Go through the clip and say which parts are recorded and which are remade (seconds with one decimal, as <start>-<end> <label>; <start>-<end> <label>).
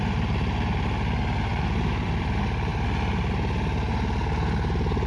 0.0-1.5 recorded; 1.5-2.3 remade; 2.3-2.7 recorded; 2.7-3.3 remade; 3.3-5.1 recorded